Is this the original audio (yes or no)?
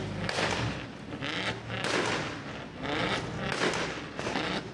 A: yes